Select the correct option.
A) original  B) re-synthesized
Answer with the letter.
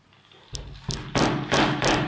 A